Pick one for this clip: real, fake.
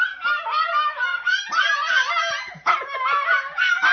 real